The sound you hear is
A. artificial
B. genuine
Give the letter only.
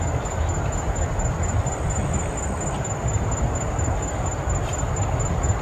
B